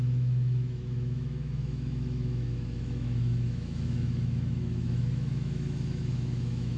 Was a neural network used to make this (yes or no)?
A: yes